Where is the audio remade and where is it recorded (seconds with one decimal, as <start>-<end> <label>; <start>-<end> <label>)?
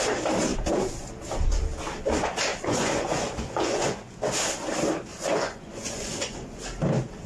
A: 0.0-2.5 recorded; 2.5-4.2 remade; 4.2-5.1 recorded; 5.1-6.6 remade; 6.6-7.3 recorded